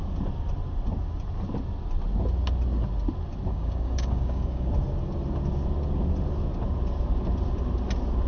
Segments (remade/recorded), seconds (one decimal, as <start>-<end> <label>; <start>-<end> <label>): 0.0-3.5 recorded; 3.5-4.7 remade; 4.7-8.3 recorded